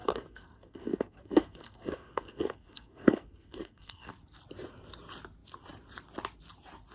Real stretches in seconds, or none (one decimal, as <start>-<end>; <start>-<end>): 4.1-6.9